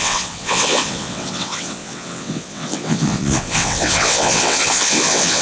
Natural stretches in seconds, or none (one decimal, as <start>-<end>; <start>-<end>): none